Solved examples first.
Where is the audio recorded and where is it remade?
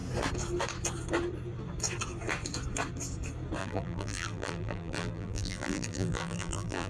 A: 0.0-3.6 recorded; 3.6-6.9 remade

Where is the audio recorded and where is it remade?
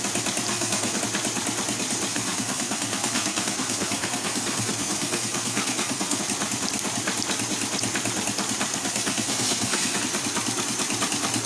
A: 0.0-0.5 recorded; 0.5-1.0 remade; 1.0-2.1 recorded; 2.1-6.2 remade; 6.2-8.7 recorded; 8.7-10.0 remade; 10.0-11.5 recorded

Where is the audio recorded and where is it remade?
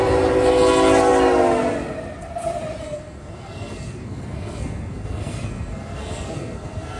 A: 0.0-2.8 recorded; 2.8-7.0 remade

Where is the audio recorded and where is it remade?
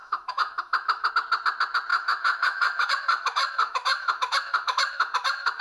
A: 0.0-1.1 remade; 1.1-1.9 recorded; 1.9-5.6 remade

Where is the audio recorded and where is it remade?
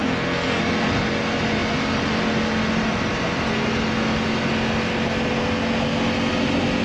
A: 0.0-0.6 remade; 0.6-6.8 recorded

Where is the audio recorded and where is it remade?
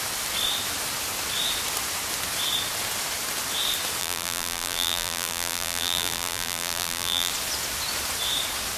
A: 0.0-4.0 recorded; 4.0-7.3 remade; 7.3-8.8 recorded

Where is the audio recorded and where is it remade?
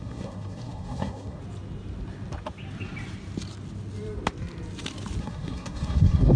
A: 0.0-1.4 remade; 1.4-5.2 recorded; 5.2-6.4 remade